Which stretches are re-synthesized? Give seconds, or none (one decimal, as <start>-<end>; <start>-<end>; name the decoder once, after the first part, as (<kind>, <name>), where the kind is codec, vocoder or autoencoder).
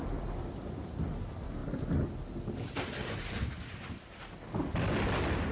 none